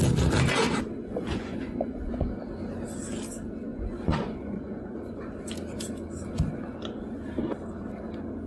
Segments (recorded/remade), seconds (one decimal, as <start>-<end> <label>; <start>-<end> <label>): 0.0-1.0 recorded; 1.0-2.3 remade; 2.3-3.7 recorded; 3.7-5.3 remade; 5.3-8.5 recorded